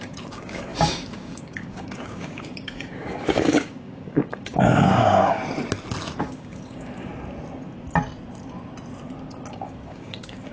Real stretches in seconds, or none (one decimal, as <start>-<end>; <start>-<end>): 5.4-6.2; 7.1-9.5